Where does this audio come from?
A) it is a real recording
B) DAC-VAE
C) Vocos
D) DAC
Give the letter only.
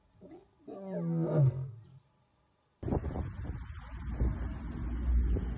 A